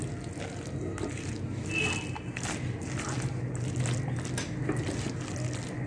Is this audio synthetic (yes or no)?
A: no